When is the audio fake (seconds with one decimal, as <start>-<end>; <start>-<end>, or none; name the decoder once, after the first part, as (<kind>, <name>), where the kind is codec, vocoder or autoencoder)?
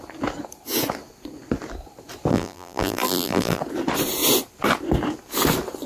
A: 2.3-3.6 (vocoder, BigVGAN v2)